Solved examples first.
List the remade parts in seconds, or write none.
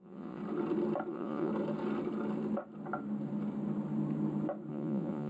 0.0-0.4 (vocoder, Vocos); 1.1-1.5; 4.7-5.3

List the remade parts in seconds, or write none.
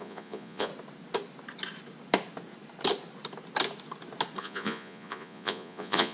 0.0-0.7 (vocoder, Vocos); 4.4-6.1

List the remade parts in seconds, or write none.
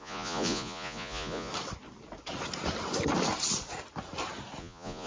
0.0-1.5 (vocoder, Vocos); 4.6-5.1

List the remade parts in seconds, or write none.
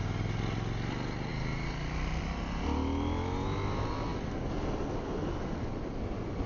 none